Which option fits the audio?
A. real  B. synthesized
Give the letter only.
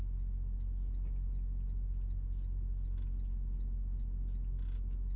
A